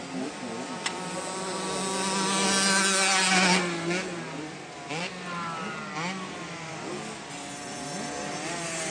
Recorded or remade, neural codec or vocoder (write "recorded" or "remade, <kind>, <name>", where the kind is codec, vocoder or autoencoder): recorded